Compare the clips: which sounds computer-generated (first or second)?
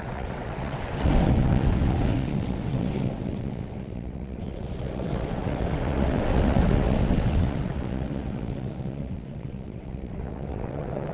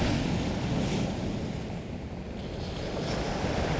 first